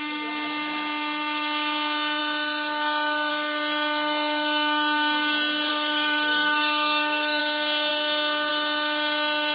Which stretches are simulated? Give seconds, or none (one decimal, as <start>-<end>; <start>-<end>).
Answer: 5.7-7.4